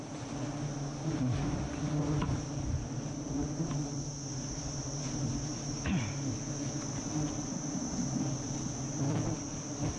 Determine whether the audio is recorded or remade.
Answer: recorded